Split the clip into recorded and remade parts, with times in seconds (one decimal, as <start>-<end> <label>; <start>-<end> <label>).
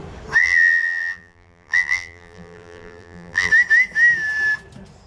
0.0-0.4 recorded; 0.4-3.5 remade; 3.5-5.1 recorded